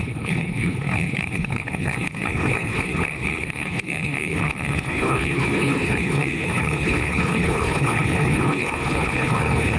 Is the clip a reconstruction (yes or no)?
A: yes